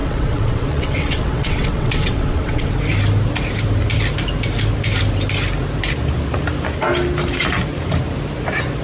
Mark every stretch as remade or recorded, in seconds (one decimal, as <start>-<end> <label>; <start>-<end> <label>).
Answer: 0.0-2.7 remade; 2.7-8.8 recorded